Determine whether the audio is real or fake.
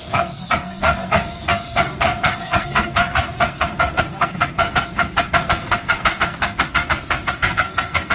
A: fake